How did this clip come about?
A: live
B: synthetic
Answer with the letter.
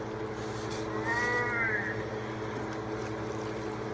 A